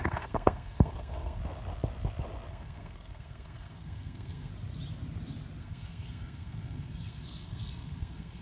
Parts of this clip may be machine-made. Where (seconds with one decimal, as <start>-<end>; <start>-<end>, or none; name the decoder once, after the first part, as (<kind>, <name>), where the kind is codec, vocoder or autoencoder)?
0.0-1.4 (codec, SNAC); 2.5-4.5; 5.6-8.4